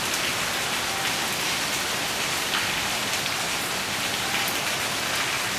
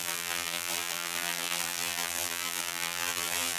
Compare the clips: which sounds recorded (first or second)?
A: first